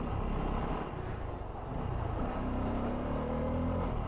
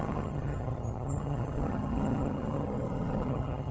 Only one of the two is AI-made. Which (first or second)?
second